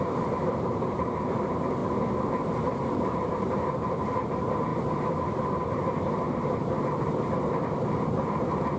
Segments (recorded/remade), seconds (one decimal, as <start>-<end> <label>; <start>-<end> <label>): 0.0-1.8 remade; 1.8-2.3 recorded; 2.3-8.8 remade